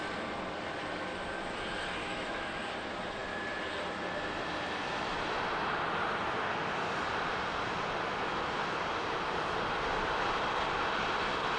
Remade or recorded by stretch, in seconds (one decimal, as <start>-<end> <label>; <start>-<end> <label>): 0.0-2.0 recorded; 2.0-2.6 remade; 2.6-11.6 recorded